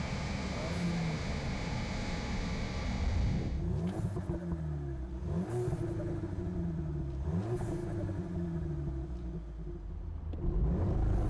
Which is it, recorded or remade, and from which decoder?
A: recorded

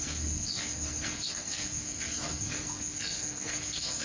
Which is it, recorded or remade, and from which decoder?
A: remade, codec, SNAC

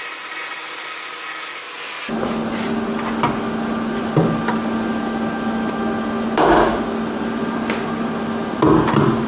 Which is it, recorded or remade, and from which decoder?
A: recorded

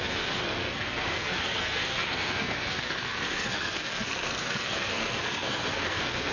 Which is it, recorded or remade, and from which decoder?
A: remade, codec, SNAC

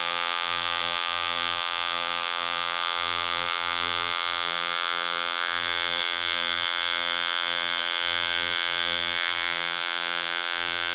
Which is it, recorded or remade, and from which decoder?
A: remade, vocoder, BigVGAN v2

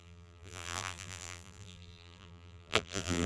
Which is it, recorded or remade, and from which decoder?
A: remade, vocoder, BigVGAN v2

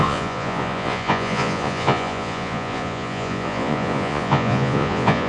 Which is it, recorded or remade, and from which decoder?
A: remade, vocoder, Vocos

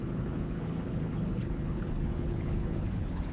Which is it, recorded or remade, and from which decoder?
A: remade, codec, HILCodec